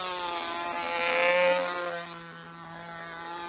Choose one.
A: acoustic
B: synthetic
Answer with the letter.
A